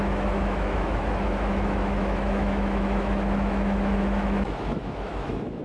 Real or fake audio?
fake